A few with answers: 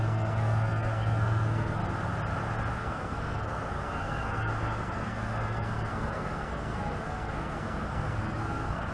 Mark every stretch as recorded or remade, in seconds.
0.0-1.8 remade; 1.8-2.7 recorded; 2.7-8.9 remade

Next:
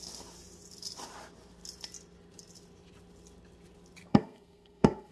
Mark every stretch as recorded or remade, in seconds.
0.0-4.1 recorded; 4.1-5.1 remade

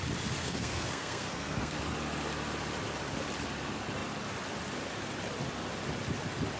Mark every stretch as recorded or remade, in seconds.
0.0-0.4 recorded; 0.4-1.8 remade; 1.8-6.6 recorded

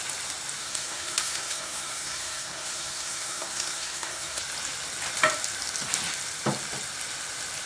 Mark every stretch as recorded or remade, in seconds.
0.0-0.6 recorded; 0.6-4.4 remade; 4.4-7.7 recorded